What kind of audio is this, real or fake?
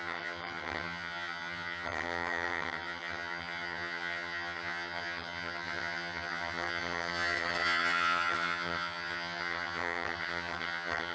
fake